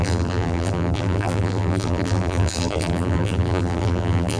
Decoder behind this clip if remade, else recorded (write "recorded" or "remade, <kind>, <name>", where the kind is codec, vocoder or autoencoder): remade, vocoder, BigVGAN v2